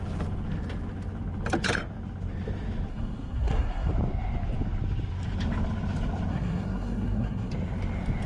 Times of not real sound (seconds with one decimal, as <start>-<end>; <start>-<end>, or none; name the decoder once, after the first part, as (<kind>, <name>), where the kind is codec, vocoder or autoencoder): 2.9-3.9 (codec, SNAC); 6.3-7.5